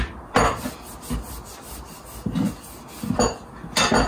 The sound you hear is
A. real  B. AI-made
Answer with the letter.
A